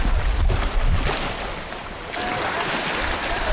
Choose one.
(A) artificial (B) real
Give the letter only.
B